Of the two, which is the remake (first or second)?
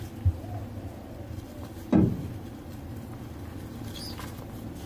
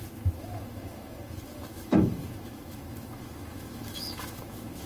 second